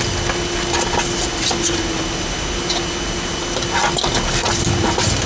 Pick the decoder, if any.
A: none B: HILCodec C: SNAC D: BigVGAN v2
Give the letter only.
A